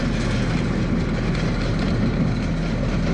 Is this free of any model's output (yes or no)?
yes